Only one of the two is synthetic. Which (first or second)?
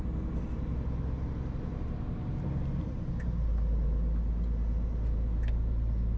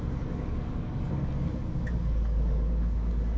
second